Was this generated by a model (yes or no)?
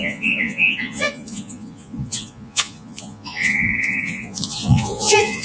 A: yes